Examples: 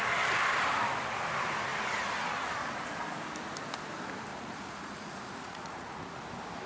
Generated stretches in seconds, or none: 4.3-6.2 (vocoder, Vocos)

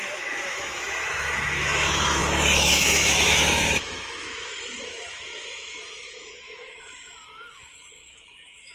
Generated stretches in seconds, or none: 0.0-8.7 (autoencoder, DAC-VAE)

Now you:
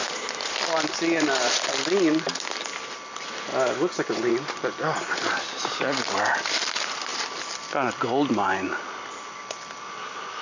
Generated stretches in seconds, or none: 0.0-3.5 (vocoder, BigVGAN v2); 4.3-10.4

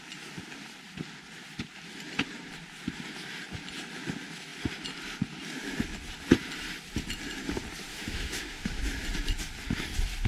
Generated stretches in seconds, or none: 7.9-8.8 (autoencoder, DAC-VAE)